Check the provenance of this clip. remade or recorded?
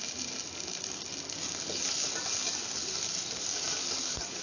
recorded